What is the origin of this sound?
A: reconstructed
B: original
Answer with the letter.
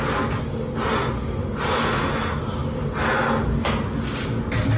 B